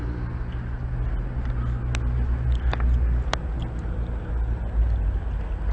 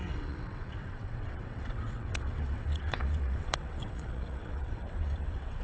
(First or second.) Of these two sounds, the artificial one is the second